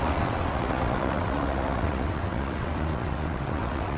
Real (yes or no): no